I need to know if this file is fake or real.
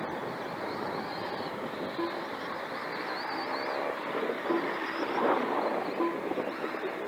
real